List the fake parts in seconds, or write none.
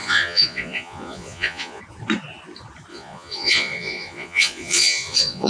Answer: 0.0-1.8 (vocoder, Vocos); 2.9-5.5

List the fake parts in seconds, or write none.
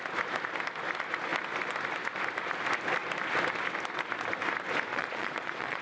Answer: 4.9-5.8 (vocoder, Vocos)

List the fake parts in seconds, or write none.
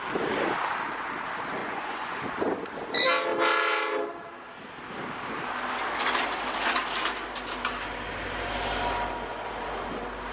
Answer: 1.6-2.2 (vocoder, Vocos)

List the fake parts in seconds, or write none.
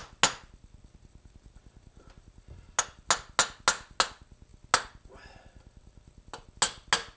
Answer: none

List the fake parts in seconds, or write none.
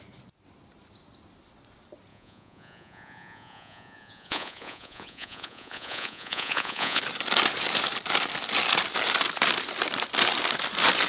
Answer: 2.1-7.0 (vocoder, Vocos)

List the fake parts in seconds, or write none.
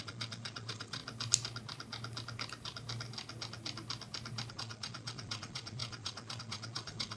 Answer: 0.0-1.0 (vocoder, Vocos); 4.5-7.2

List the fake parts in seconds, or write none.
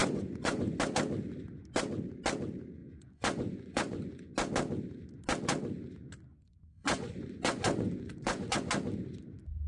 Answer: 0.0-0.8 (vocoder, Vocos); 2.8-4.3; 6.3-8.7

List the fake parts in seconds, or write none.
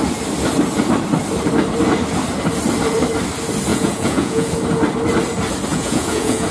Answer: 3.7-4.5 (vocoder, Vocos); 5.7-6.5